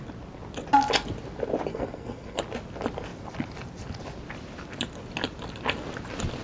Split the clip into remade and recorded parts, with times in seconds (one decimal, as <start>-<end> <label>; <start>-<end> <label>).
0.0-1.7 recorded; 1.7-2.4 remade; 2.4-6.4 recorded